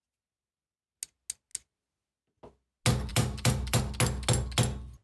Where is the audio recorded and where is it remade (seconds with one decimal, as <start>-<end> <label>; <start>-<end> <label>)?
0.0-3.1 recorded; 3.1-3.8 remade; 3.8-5.0 recorded